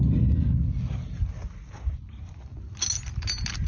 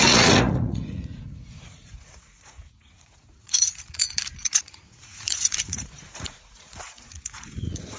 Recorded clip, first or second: first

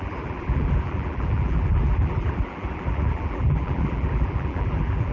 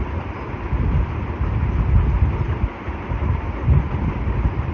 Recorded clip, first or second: second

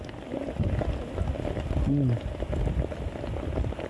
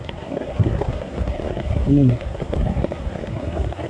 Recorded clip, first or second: first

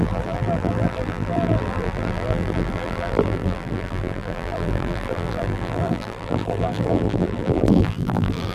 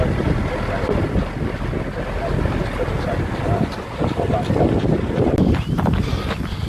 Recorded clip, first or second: second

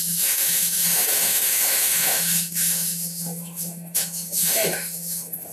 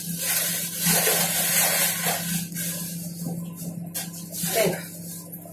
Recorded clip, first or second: second